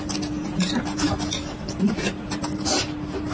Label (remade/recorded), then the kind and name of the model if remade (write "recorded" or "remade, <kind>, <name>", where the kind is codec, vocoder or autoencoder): recorded